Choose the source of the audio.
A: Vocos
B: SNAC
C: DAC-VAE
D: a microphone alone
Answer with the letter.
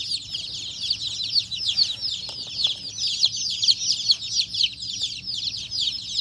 D